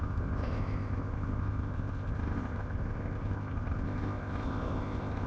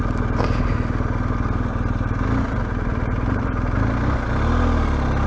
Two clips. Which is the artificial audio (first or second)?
first